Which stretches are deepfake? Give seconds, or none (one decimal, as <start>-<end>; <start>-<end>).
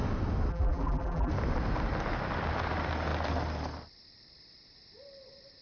0.5-1.3